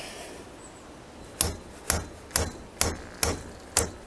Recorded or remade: recorded